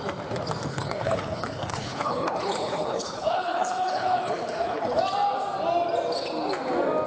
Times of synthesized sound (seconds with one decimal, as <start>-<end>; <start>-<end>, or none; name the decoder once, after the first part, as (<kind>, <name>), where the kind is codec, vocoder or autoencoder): 0.7-5.0 (codec, HILCodec)